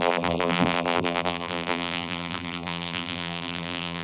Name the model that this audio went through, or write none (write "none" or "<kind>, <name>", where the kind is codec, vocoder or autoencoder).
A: vocoder, BigVGAN v2